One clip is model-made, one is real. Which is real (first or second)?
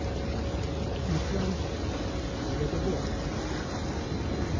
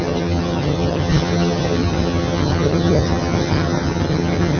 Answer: first